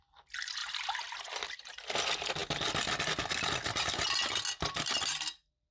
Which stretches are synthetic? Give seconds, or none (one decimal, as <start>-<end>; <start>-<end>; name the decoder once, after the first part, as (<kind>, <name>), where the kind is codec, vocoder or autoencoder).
none

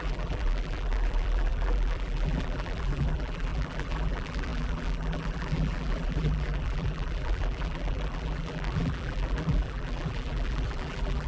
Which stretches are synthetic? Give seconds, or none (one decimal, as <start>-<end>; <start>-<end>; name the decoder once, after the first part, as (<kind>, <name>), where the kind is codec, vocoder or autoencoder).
0.0-11.3 (vocoder, BigVGAN v2)

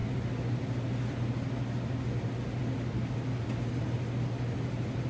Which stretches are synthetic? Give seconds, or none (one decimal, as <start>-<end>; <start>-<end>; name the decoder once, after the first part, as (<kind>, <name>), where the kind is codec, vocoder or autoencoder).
none

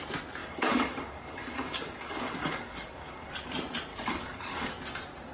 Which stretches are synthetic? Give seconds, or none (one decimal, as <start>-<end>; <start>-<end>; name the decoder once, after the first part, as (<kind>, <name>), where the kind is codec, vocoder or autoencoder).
0.4-3.3 (codec, DAC); 3.9-4.7

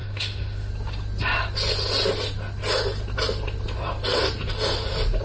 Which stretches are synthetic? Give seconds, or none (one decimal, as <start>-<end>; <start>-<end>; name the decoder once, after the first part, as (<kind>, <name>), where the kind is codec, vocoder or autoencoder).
0.0-0.7 (autoencoder, DAC-VAE)

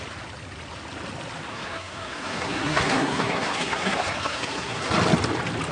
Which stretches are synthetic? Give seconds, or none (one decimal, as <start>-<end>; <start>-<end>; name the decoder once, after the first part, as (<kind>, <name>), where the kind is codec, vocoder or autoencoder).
1.5-4.9 (codec, SNAC)